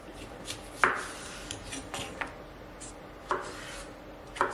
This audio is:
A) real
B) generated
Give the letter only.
A